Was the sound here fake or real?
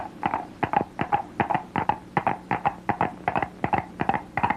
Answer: real